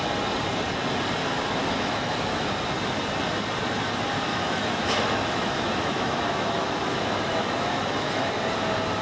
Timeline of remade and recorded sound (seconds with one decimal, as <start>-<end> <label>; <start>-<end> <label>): 0.0-1.6 recorded; 1.6-2.5 remade; 2.5-4.3 recorded; 4.3-8.3 remade; 8.3-9.0 recorded